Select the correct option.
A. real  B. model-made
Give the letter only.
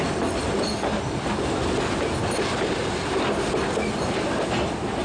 A